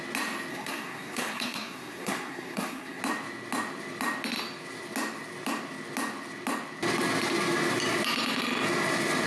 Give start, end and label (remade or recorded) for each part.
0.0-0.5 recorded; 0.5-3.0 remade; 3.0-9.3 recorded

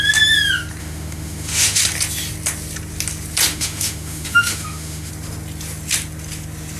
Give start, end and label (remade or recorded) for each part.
0.0-0.8 recorded; 0.8-1.8 remade; 1.8-3.5 recorded; 3.5-5.1 remade; 5.1-6.8 recorded

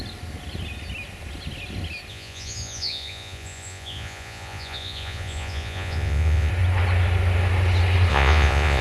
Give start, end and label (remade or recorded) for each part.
0.0-2.1 recorded; 2.1-6.5 remade; 6.5-8.1 recorded; 8.1-8.8 remade

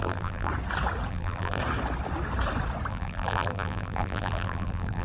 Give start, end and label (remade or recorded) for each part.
0.0-0.5 remade; 0.5-1.1 recorded; 1.1-1.6 remade; 1.6-2.9 recorded; 2.9-5.0 remade

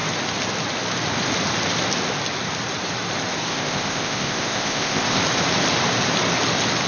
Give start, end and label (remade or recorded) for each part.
0.0-3.5 recorded; 3.5-5.2 remade; 5.2-6.9 recorded